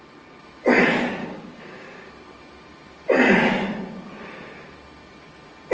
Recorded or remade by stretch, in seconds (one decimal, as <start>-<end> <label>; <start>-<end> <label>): 0.0-1.2 recorded; 1.2-2.1 remade; 2.1-5.7 recorded

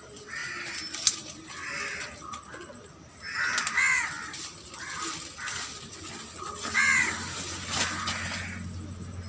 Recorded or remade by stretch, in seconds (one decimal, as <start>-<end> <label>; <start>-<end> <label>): 0.0-9.3 recorded

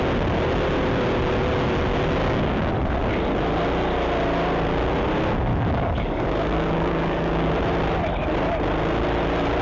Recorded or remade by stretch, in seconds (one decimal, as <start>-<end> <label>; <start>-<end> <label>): 0.0-2.2 recorded; 2.2-2.7 remade; 2.7-5.5 recorded; 5.5-7.5 remade; 7.5-9.6 recorded

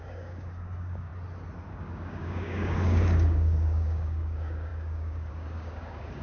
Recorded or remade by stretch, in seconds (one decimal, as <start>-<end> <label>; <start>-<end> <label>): 0.0-1.1 remade; 1.1-1.7 recorded; 1.7-6.2 remade

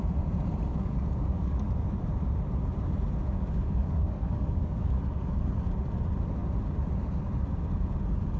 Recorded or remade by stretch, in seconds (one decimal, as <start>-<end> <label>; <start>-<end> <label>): 0.0-0.7 recorded; 0.7-1.7 remade; 1.7-3.2 recorded; 3.2-5.4 remade; 5.4-8.4 recorded

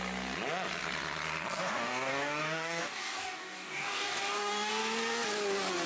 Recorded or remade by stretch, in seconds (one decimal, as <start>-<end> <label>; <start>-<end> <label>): 0.0-1.6 recorded; 1.6-4.7 remade; 4.7-5.9 recorded

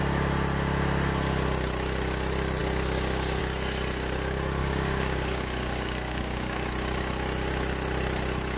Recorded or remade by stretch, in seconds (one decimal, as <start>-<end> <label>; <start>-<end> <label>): 0.0-4.6 recorded; 4.6-6.7 remade; 6.7-8.6 recorded